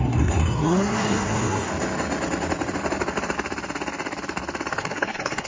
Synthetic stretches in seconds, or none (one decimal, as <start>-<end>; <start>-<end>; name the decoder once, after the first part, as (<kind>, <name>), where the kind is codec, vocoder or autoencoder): 0.0-1.7 (codec, SNAC); 4.7-5.5